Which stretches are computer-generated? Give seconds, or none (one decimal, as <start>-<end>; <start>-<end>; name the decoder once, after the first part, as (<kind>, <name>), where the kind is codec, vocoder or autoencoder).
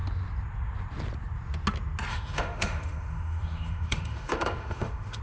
2.1-5.2 (autoencoder, DAC-VAE)